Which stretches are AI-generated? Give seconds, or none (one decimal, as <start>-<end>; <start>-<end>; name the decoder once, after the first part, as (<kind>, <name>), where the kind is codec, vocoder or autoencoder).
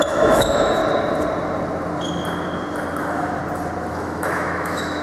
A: 0.0-0.8 (autoencoder, DAC-VAE); 3.0-3.4; 3.9-5.0